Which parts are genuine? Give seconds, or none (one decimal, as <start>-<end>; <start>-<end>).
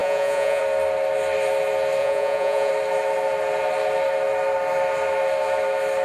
0.6-2.0; 2.7-6.0